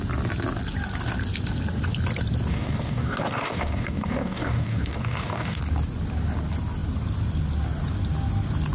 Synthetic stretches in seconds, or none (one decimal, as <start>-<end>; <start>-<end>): 2.5-5.6